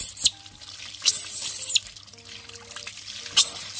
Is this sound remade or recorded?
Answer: recorded